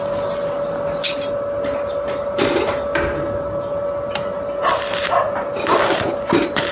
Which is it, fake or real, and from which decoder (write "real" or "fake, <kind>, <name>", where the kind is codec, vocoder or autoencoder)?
real